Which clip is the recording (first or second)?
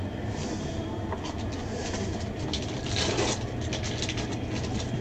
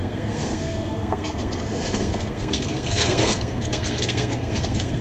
first